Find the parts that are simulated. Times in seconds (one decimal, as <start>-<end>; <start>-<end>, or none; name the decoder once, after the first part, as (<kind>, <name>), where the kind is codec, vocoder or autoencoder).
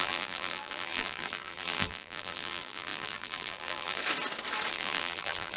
0.0-4.0 (vocoder, BigVGAN v2); 4.7-5.6